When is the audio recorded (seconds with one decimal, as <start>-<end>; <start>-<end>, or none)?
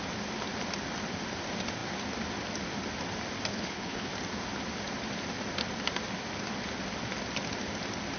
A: 0.0-3.5; 4.1-8.2